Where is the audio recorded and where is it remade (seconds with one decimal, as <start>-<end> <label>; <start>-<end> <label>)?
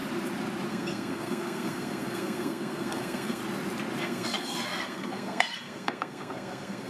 0.0-0.7 recorded; 0.7-3.4 remade; 3.4-4.0 recorded; 4.0-6.9 remade